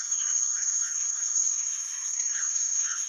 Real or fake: fake